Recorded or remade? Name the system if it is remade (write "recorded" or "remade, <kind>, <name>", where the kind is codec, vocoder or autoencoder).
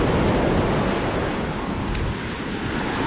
recorded